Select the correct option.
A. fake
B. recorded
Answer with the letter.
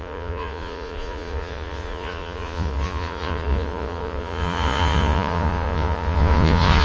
A